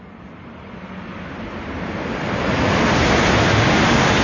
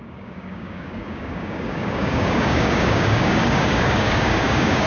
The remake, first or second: second